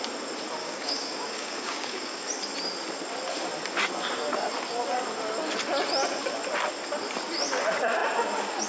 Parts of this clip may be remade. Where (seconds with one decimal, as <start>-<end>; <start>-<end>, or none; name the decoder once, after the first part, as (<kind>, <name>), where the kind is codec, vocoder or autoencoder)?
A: 0.6-2.2 (codec, DAC)